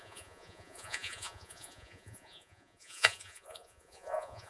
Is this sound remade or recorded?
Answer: remade